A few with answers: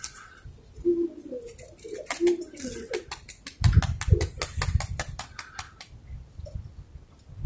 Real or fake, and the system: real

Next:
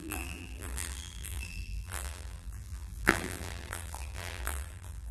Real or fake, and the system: fake, vocoder, BigVGAN v2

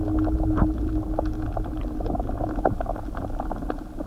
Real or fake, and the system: real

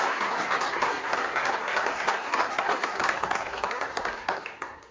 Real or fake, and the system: fake, codec, SNAC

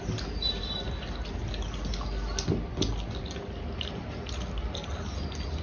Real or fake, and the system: real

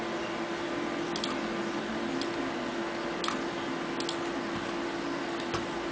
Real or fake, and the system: real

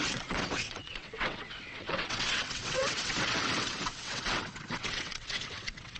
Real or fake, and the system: fake, vocoder, WaveNeXt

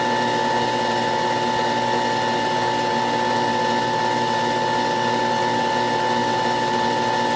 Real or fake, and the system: real